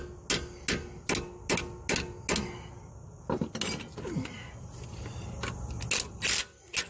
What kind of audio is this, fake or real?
real